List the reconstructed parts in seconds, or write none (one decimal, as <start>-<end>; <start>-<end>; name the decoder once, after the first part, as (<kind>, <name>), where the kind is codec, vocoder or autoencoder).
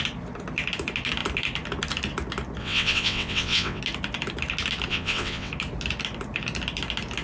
2.6-3.8 (vocoder, WaveNeXt); 4.9-5.5